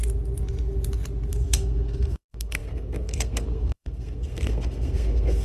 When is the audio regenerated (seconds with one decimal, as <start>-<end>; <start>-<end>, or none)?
1.3-5.4